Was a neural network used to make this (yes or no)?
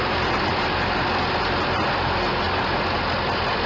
no